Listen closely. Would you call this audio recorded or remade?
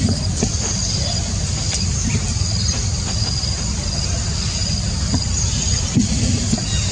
remade